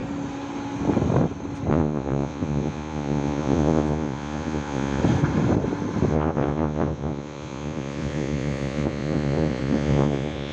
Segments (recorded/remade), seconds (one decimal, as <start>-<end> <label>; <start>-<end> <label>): 0.0-1.7 recorded; 1.7-5.0 remade; 5.0-6.1 recorded; 6.1-10.5 remade